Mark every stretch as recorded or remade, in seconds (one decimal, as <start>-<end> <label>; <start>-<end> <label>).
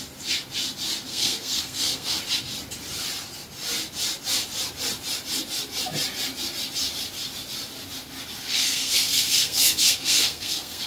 0.0-1.1 recorded; 1.1-2.2 remade; 2.2-8.4 recorded; 8.4-10.9 remade